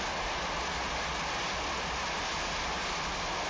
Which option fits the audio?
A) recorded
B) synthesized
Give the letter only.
A